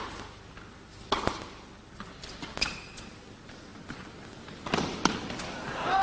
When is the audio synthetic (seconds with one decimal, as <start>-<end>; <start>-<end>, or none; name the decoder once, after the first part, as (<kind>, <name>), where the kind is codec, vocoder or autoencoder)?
none